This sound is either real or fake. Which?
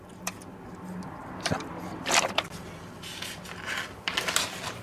fake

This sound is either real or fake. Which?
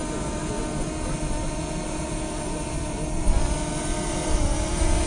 real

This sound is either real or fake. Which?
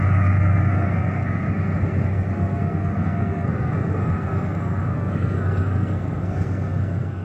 fake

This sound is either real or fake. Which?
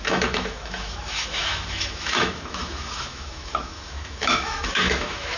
fake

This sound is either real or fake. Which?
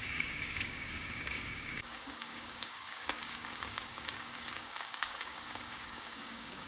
fake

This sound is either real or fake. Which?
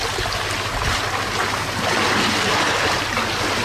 real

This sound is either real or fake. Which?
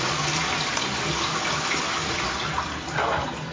real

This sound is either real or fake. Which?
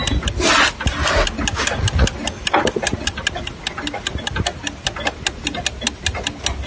real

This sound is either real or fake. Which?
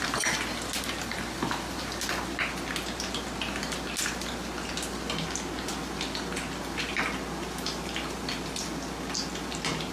real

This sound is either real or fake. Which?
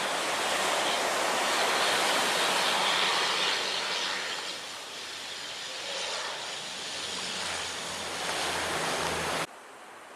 real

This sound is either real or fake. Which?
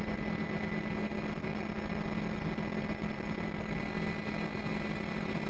real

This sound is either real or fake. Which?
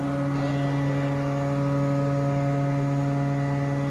real